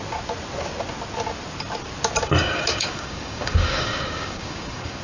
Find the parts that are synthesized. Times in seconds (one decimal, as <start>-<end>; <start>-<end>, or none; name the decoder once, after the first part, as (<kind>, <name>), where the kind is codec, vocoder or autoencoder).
2.4-5.0 (codec, DAC)